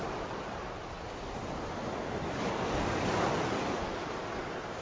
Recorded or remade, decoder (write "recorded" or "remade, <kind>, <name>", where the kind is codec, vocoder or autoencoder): recorded